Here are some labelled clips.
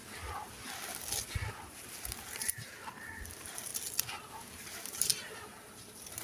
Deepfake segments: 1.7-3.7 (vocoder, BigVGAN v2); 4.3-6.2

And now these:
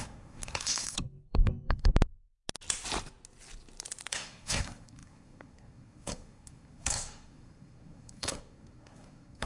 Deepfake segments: 0.0-1.9 (codec, SNAC); 4.1-9.5

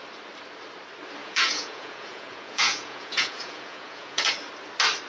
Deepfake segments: 1.2-4.3 (vocoder, Vocos)

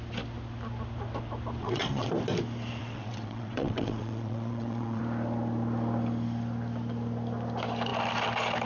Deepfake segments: 1.6-2.1 (vocoder, WaveNeXt); 2.8-5.0

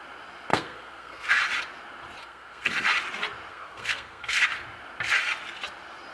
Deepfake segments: 0.5-1.3 (codec, SNAC); 2.2-2.7; 3.5-4.4